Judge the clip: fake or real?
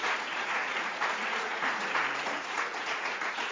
fake